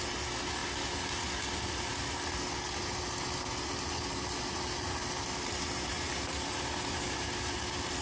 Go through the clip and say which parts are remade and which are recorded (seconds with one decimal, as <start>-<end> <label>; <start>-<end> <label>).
0.0-8.0 recorded